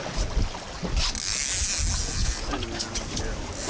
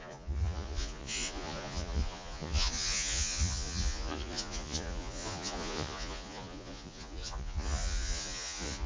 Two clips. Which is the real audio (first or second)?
first